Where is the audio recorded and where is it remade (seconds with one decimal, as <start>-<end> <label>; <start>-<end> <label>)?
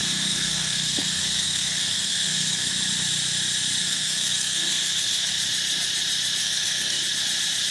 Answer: 0.0-2.7 remade; 2.7-3.8 recorded; 3.8-5.3 remade; 5.3-6.4 recorded; 6.4-7.0 remade; 7.0-7.7 recorded